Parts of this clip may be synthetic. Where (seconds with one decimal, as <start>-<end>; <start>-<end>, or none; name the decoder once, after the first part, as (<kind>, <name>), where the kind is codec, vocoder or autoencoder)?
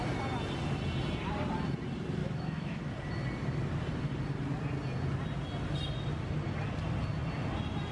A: 2.2-2.8 (autoencoder, DAC-VAE)